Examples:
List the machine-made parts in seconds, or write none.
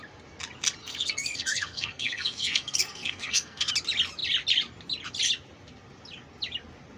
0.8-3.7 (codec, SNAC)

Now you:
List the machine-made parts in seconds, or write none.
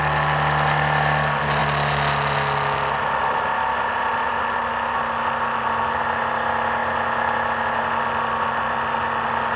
none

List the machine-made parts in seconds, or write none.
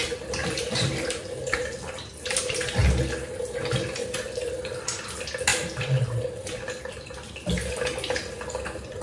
0.4-2.4 (vocoder, BigVGAN v2); 5.5-6.8